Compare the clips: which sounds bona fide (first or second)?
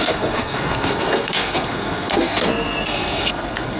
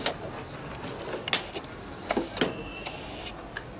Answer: second